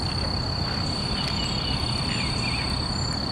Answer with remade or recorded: recorded